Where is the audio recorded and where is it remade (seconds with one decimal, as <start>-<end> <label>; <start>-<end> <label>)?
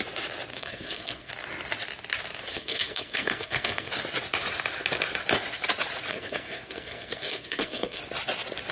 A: 0.0-0.5 recorded; 0.5-1.3 remade; 1.3-2.5 recorded; 2.5-3.9 remade; 3.9-6.1 recorded; 6.1-8.0 remade; 8.0-8.7 recorded